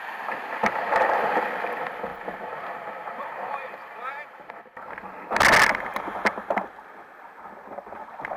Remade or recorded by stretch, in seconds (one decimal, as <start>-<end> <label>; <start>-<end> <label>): 0.0-2.1 recorded; 2.1-4.6 remade; 4.6-8.4 recorded